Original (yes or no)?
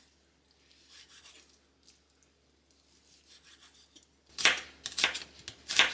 yes